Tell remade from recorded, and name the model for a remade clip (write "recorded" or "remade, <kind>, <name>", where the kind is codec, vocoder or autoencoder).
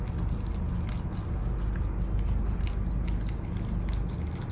recorded